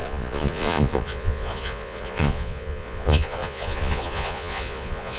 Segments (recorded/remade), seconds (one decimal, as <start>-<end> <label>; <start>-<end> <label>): 0.0-5.2 remade